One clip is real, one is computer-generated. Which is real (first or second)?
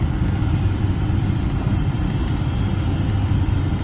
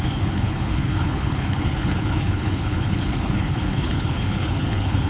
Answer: first